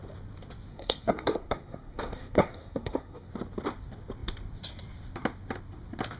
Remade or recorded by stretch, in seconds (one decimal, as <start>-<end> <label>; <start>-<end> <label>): 0.0-0.7 recorded; 0.7-3.3 remade; 3.3-6.2 recorded

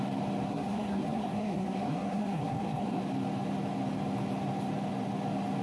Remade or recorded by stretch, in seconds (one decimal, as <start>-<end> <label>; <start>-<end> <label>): 0.0-0.5 recorded; 0.5-3.0 remade; 3.0-5.6 recorded

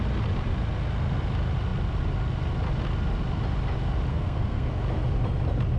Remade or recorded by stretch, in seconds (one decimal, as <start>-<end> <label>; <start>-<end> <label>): 0.0-4.1 recorded; 4.1-4.7 remade; 4.7-5.8 recorded

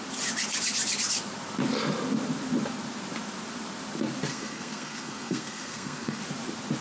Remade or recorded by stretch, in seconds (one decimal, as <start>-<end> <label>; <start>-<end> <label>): 0.0-4.3 recorded; 4.3-6.2 remade; 6.2-6.8 recorded